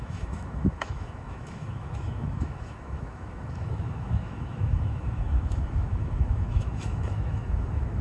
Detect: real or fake fake